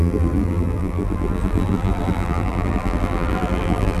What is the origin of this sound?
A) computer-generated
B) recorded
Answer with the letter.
A